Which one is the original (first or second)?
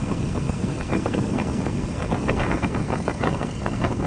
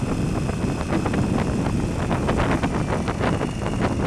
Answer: second